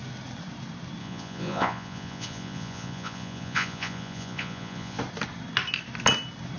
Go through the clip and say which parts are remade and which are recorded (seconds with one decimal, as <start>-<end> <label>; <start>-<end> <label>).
0.0-1.0 recorded; 1.0-5.0 remade; 5.0-6.6 recorded